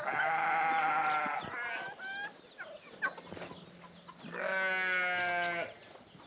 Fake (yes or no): no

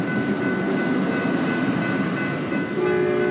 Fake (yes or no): no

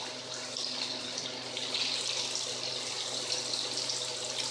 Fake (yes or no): yes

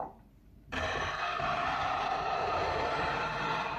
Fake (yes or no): yes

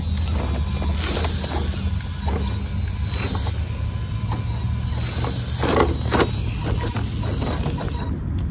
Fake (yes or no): no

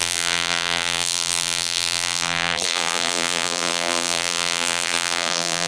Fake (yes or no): yes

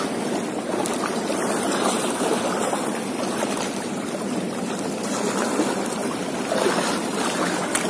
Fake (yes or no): yes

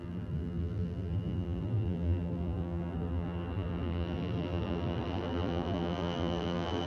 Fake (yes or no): yes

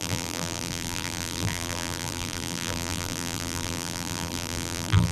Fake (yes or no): yes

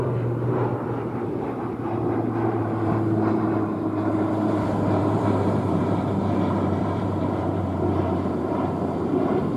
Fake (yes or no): yes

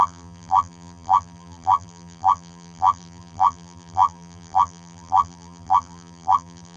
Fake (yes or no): yes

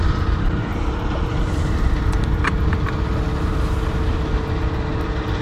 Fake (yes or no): no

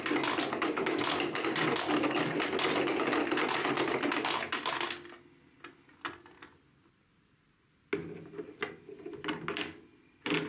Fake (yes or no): no